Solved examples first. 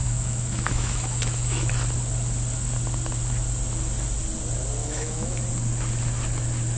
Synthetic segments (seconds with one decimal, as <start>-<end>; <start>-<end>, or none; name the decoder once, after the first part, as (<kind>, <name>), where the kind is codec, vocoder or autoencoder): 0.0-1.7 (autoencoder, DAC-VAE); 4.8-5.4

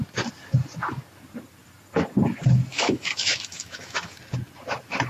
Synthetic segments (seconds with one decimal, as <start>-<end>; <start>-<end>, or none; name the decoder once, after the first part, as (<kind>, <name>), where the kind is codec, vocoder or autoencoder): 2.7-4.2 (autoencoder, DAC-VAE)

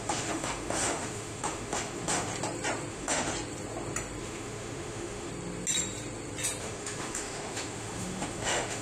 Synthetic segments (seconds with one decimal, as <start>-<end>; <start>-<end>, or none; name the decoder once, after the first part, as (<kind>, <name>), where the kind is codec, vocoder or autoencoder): 0.0-2.3 (autoencoder, DAC-VAE); 2.9-3.3; 4.2-5.3; 6.6-8.8